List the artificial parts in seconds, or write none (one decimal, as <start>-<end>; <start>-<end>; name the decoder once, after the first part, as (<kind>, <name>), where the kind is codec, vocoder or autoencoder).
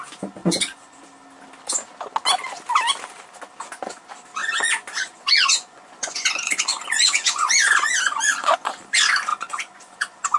0.4-1.0 (vocoder, Vocos); 4.4-8.7; 9.3-10.4